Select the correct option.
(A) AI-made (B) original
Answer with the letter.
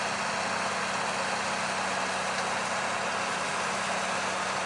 B